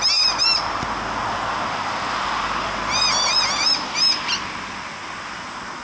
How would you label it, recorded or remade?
recorded